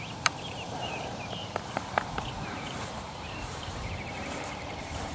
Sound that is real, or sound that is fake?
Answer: fake